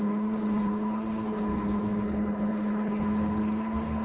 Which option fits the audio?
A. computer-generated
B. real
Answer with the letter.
A